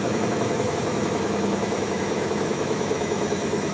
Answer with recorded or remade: remade